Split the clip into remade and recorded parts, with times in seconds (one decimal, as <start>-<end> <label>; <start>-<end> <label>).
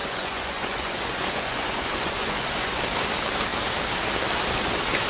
0.0-2.8 remade; 2.8-5.1 recorded